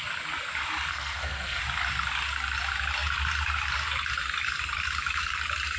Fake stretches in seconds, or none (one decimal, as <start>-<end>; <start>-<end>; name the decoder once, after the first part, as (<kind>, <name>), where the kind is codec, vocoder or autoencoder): 0.9-1.6 (codec, SNAC)